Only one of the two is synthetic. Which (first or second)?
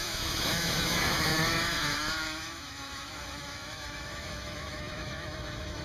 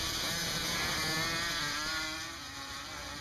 first